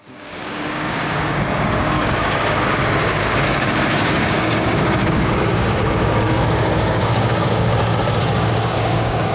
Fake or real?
fake